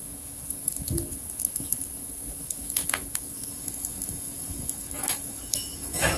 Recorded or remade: remade